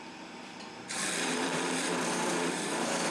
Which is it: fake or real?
fake